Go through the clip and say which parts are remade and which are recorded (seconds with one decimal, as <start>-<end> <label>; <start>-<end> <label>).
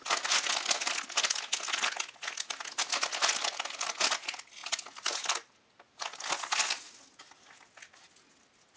0.0-8.8 recorded